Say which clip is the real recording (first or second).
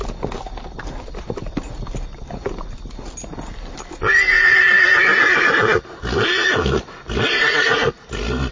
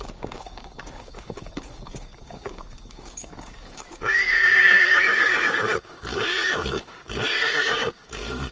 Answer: first